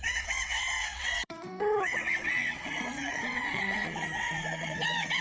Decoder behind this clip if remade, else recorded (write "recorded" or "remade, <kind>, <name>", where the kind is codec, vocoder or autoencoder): remade, vocoder, WaveNeXt